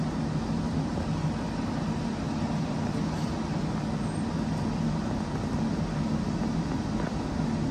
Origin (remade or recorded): recorded